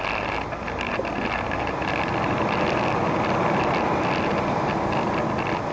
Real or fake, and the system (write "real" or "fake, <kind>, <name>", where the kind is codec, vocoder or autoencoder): real